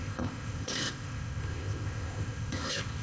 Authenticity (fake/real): fake